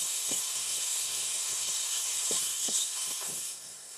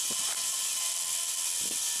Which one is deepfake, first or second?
first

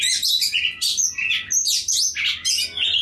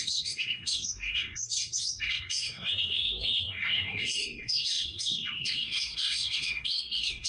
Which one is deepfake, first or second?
second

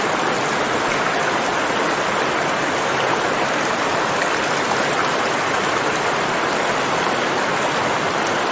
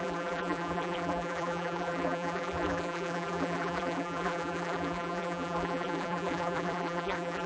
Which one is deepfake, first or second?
second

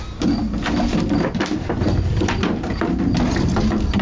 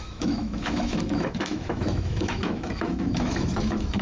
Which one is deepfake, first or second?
second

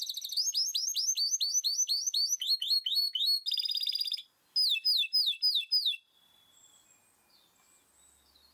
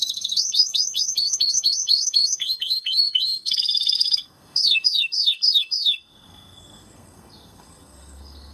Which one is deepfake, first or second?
second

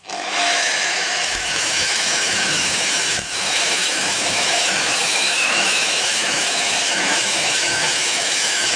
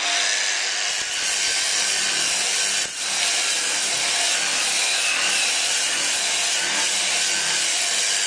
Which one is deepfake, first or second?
first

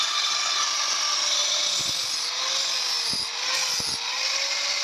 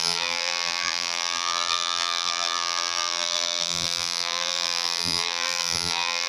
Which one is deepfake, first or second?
second